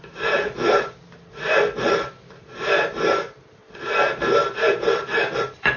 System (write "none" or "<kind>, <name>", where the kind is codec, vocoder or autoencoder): none